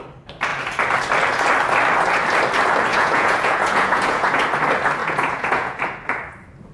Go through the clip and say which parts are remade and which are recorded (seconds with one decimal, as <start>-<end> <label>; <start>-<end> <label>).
0.0-2.9 recorded; 2.9-4.4 remade; 4.4-5.0 recorded; 5.0-5.8 remade; 5.8-6.7 recorded